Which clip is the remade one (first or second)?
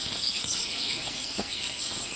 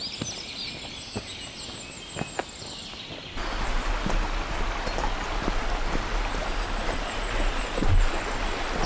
first